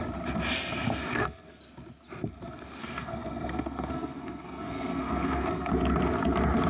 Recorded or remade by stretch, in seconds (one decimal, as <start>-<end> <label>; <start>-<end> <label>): 0.0-1.1 recorded; 1.1-1.6 remade; 1.6-2.8 recorded; 2.8-5.7 remade; 5.7-6.7 recorded